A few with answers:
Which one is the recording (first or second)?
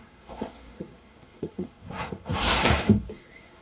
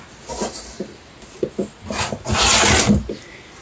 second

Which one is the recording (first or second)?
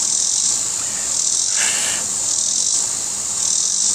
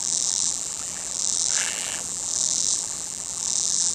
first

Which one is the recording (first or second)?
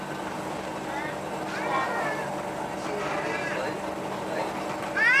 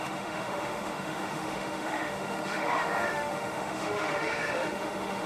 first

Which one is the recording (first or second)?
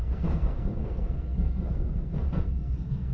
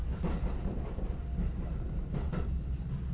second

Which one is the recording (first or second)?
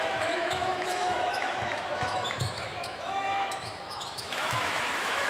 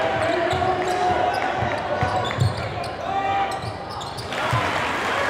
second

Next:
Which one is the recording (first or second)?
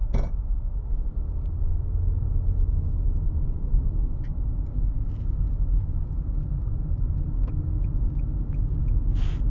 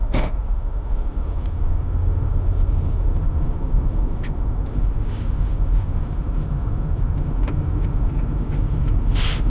first